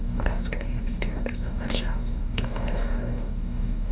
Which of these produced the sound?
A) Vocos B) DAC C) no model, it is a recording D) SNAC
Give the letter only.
B